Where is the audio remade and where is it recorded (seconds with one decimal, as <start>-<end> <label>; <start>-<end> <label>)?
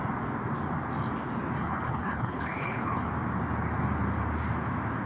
0.0-1.6 recorded; 1.6-3.1 remade; 3.1-5.1 recorded